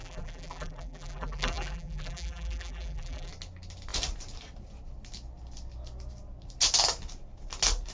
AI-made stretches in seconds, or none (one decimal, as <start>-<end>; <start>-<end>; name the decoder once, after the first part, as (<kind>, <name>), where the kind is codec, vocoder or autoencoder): 0.0-3.3 (vocoder, BigVGAN v2)